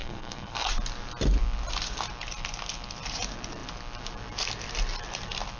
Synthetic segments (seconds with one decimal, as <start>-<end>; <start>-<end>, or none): 0.0-0.7